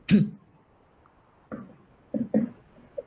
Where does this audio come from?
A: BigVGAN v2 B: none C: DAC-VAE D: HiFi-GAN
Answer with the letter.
B